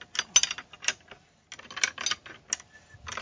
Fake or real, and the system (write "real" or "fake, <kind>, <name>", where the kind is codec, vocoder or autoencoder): real